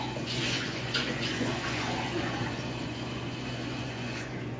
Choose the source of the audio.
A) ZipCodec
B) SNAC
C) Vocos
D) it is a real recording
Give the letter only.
C